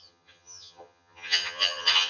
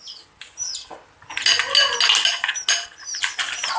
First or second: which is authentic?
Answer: second